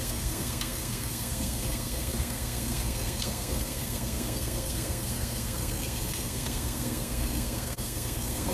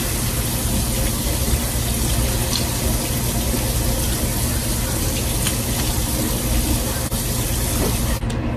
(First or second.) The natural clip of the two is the second